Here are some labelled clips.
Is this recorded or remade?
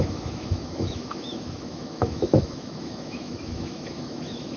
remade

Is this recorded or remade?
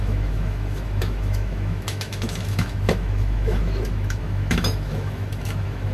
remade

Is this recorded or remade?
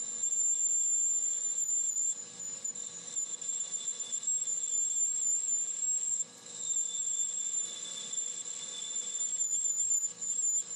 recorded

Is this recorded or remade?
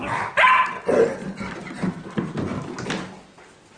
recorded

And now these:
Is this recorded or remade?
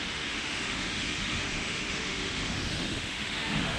remade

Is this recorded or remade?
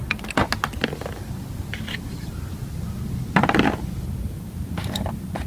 recorded